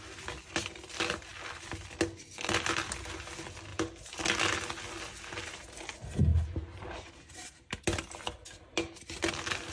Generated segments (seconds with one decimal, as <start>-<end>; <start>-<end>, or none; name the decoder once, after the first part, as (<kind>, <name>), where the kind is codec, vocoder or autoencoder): 3.7-4.2 (vocoder, BigVGAN v2); 6.3-7.7